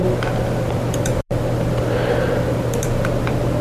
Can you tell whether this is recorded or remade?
recorded